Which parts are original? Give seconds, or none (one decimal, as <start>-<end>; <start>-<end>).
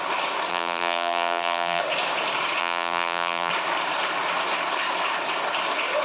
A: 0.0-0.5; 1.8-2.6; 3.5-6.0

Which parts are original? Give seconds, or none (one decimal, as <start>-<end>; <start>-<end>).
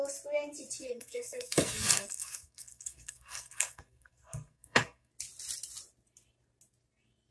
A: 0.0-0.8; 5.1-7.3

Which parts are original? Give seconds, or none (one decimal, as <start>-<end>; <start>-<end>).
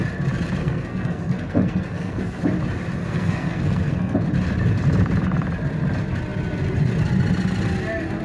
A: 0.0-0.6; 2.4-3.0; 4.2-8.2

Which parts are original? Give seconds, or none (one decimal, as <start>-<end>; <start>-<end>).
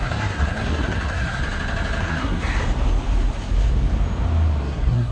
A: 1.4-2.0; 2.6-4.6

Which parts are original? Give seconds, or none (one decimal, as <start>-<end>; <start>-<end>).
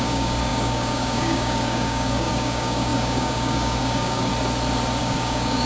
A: 4.3-5.0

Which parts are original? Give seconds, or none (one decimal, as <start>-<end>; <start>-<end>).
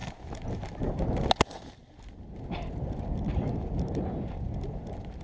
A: 0.0-5.2